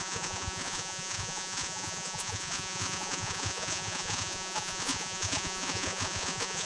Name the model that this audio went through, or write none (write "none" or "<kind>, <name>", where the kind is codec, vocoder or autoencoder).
vocoder, Vocos